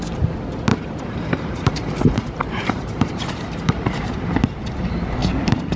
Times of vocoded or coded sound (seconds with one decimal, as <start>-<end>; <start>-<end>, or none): 0.7-4.2; 5.2-5.8

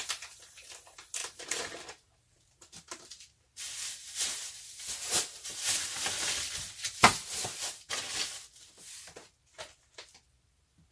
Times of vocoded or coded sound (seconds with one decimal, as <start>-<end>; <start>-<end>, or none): 1.2-5.9; 7.5-8.1

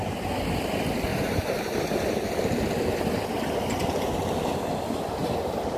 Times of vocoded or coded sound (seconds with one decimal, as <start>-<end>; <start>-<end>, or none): 1.1-2.9; 5.2-5.8

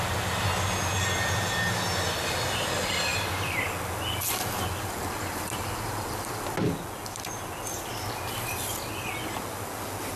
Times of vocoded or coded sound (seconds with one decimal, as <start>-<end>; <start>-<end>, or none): 3.1-3.6

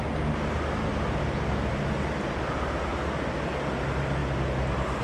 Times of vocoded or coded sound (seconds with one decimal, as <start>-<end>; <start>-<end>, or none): 0.9-1.5; 2.9-3.4

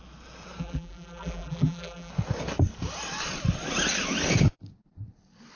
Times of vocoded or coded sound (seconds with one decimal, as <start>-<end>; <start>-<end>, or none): 0.6-2.1